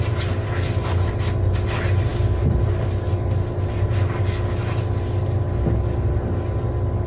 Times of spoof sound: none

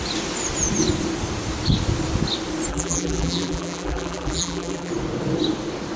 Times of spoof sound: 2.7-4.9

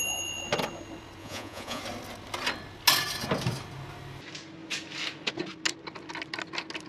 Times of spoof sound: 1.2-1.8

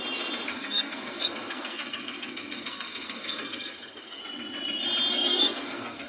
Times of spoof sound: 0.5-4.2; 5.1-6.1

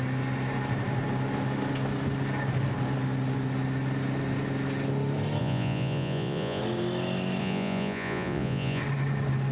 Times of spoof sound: 5.4-6.6; 7.4-8.8